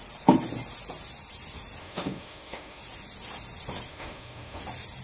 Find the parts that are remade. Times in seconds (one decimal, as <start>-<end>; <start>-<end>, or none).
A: 1.8-2.8; 3.9-4.6